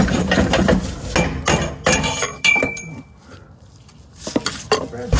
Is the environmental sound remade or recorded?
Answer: recorded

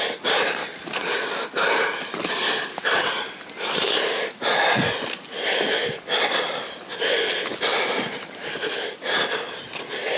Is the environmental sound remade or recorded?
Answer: recorded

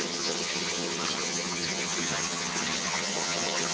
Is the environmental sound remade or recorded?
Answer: remade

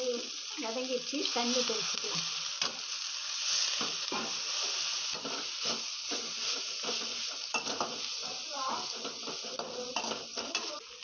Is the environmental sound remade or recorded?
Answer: recorded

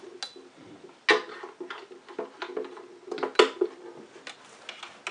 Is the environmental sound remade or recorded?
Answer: recorded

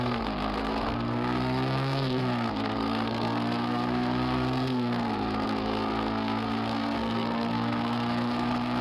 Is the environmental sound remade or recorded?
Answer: remade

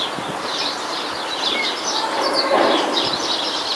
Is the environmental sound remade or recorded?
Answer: remade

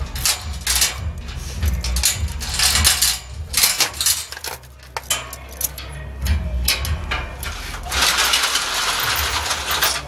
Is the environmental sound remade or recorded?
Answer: recorded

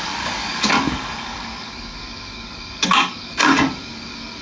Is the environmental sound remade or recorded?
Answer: remade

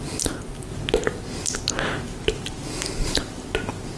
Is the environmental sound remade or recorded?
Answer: recorded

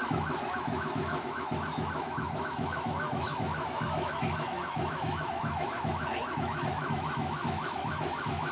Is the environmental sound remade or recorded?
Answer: remade